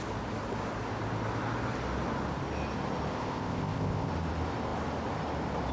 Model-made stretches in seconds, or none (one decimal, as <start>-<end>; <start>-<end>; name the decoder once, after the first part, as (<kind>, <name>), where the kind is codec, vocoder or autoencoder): 3.1-4.1 (codec, ZipCodec)